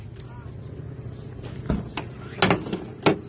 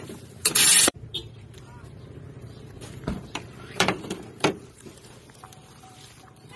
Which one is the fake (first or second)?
second